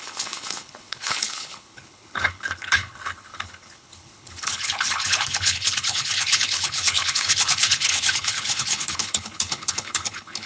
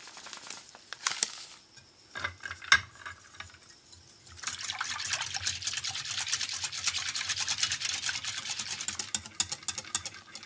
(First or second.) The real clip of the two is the second